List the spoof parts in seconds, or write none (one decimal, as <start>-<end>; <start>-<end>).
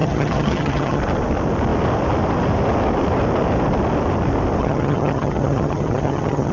0.0-1.0; 4.6-6.5